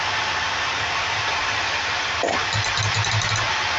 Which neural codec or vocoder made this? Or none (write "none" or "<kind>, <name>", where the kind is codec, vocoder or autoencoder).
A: none